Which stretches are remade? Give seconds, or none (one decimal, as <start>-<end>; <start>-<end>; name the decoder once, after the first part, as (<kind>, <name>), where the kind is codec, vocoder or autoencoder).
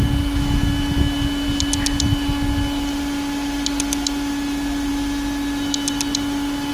none